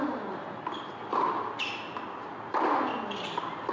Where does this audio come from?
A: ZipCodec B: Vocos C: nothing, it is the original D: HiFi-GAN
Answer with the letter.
C